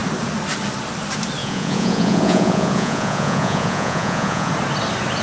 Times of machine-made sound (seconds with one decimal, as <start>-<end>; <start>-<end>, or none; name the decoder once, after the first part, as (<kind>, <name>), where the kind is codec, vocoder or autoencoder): 1.4-4.5 (vocoder, Vocos)